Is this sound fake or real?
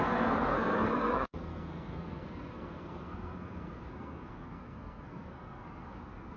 fake